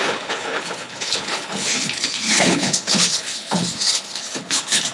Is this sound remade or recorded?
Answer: remade